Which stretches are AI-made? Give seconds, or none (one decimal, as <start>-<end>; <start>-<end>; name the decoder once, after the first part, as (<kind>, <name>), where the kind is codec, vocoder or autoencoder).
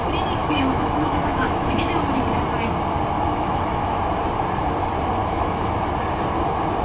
0.4-1.9 (autoencoder, DAC-VAE); 3.3-4.0; 5.2-5.7